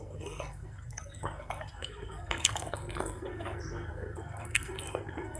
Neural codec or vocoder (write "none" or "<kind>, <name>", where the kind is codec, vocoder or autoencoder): codec, SNAC